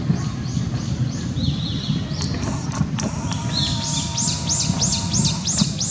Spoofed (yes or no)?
no